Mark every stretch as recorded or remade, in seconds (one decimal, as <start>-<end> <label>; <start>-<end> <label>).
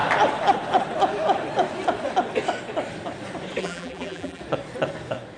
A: 0.0-3.6 recorded; 3.6-4.4 remade; 4.4-5.4 recorded